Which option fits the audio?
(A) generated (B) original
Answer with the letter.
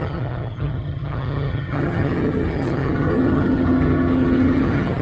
A